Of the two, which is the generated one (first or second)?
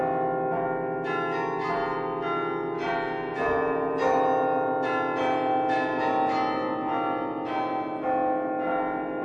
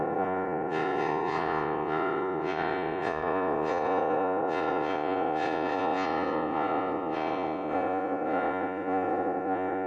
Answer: second